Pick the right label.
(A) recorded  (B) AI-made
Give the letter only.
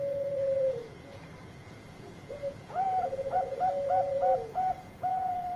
B